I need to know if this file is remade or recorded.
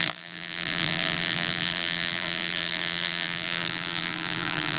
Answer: remade